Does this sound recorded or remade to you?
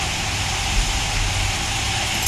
recorded